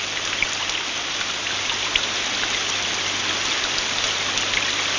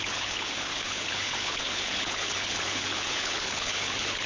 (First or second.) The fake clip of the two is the second